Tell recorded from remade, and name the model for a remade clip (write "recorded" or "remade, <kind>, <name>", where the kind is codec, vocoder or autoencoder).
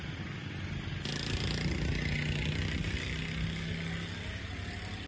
recorded